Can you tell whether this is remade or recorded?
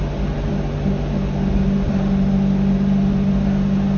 recorded